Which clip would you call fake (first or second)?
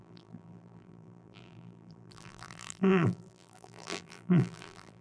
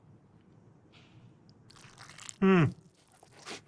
first